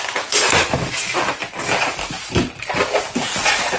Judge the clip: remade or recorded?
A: recorded